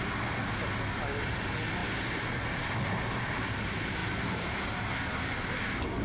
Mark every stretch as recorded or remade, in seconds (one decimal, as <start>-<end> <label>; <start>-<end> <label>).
0.0-1.8 recorded; 1.8-2.3 remade; 2.3-4.0 recorded; 4.0-4.8 remade; 4.8-6.0 recorded